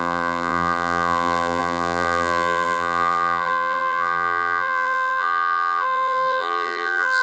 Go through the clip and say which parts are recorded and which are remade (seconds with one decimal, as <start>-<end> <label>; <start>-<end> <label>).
0.0-7.2 remade